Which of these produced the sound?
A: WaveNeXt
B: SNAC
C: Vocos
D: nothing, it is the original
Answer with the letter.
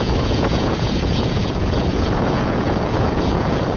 C